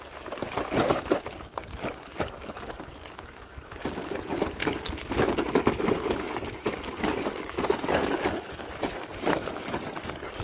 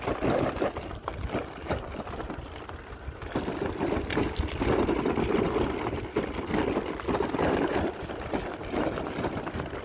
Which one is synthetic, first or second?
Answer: first